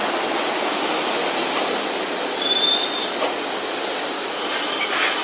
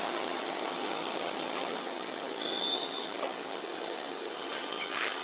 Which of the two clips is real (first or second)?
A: first